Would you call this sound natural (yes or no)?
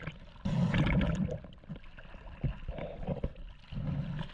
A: yes